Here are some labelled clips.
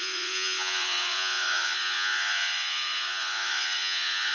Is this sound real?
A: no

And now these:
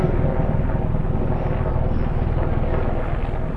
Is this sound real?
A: no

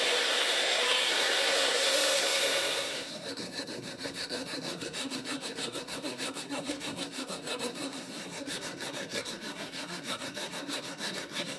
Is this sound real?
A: no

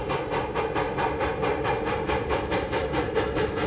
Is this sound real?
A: yes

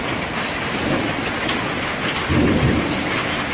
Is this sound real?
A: yes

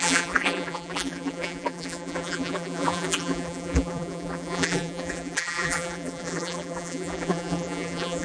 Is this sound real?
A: no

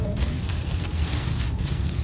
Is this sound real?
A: no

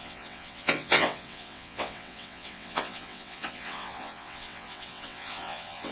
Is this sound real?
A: no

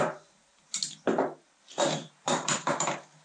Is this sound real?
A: no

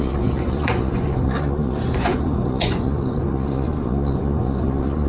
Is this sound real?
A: no